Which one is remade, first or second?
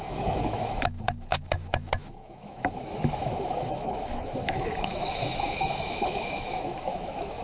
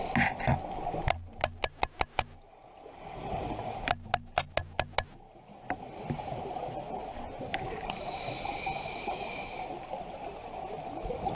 first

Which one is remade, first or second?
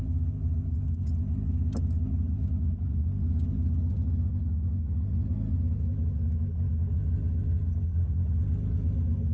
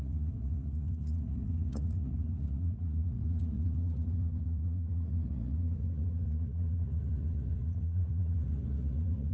second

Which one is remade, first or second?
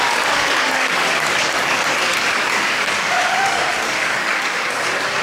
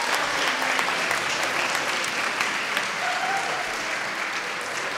first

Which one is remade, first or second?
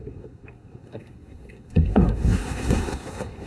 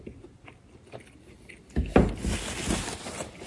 first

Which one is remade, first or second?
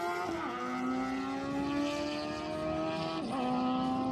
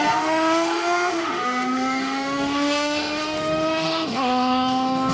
second